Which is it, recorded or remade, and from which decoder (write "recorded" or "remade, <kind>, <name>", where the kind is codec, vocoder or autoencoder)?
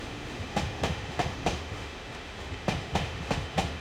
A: remade, autoencoder, DAC-VAE